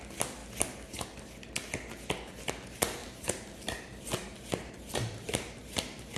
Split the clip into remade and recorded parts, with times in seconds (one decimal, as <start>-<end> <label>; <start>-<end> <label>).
0.0-3.0 recorded; 3.0-6.2 remade